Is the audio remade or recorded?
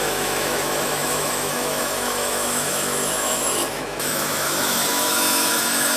remade